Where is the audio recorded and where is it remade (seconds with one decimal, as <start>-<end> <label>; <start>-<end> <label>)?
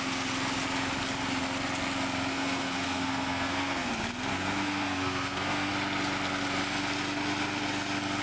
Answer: 0.0-2.3 recorded; 2.3-3.9 remade; 3.9-4.3 recorded; 4.3-5.7 remade; 5.7-8.2 recorded